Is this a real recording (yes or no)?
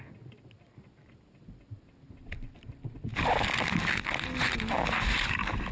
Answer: yes